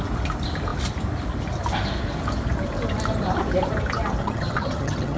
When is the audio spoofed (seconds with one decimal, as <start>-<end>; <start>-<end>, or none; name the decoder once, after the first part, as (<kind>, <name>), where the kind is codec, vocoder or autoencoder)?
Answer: 4.2-5.2 (vocoder, HiFi-GAN)